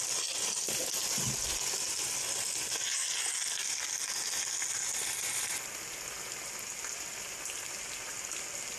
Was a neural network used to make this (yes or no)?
no